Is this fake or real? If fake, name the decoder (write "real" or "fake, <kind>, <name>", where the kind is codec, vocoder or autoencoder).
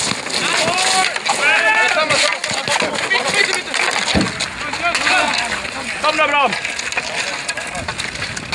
real